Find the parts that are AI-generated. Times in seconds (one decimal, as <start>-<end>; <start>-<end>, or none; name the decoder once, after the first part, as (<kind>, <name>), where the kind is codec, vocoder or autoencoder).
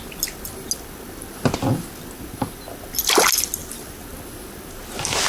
none